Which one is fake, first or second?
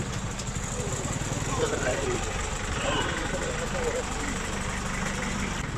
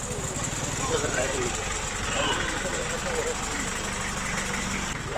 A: first